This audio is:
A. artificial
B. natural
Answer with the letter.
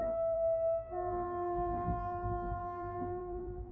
A